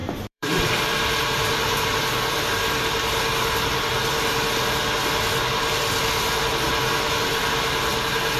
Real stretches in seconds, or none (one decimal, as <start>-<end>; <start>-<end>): 1.8-8.4